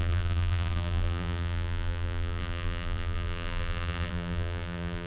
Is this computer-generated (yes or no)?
yes